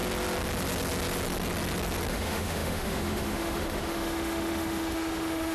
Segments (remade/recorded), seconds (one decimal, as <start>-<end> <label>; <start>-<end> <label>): 0.0-2.1 recorded; 2.1-5.5 remade